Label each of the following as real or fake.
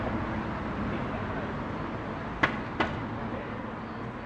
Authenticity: real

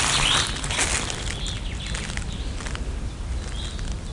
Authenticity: real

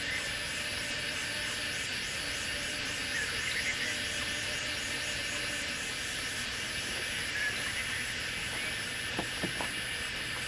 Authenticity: real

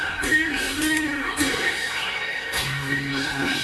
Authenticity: fake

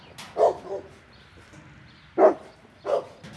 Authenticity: real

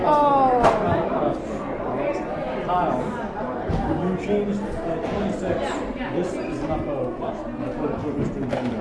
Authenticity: real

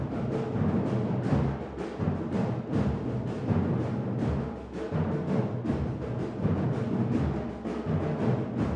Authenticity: real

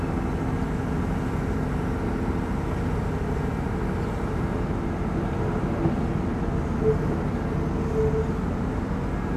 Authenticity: real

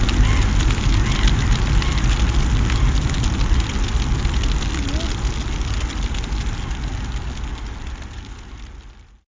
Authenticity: real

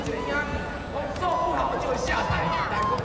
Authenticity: fake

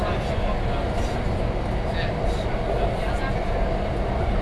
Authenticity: real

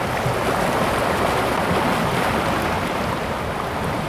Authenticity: real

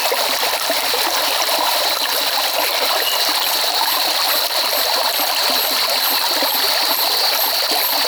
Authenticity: real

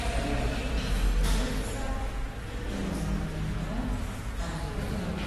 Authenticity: real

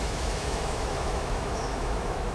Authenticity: fake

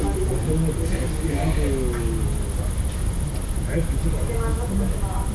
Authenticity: real